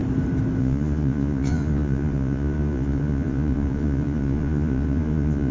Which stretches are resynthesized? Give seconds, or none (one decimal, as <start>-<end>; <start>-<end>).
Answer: 0.6-5.5